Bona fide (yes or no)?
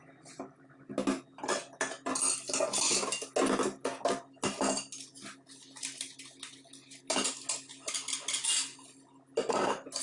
yes